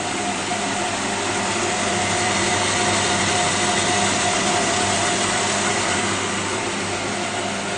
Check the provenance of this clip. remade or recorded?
remade